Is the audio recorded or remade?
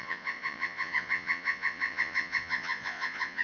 remade